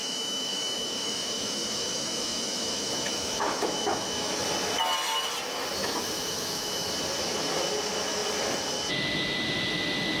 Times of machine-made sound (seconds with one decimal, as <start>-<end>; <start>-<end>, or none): 0.0-4.4; 5.8-6.9